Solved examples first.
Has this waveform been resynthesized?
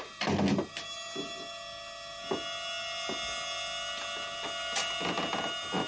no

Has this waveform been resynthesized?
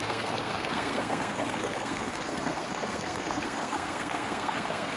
yes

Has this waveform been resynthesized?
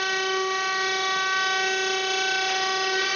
no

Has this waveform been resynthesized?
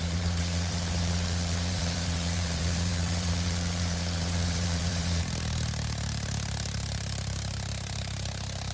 yes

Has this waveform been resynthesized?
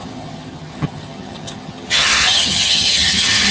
yes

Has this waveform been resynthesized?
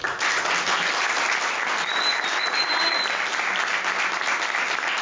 no